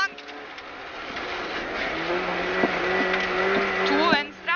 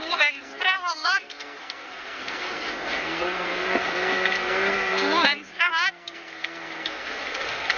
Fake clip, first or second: second